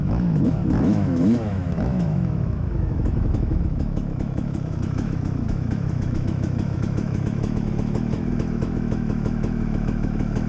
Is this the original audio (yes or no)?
no